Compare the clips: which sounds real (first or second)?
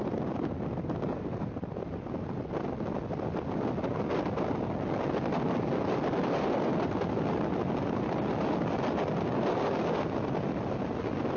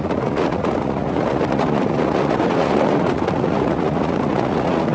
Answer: first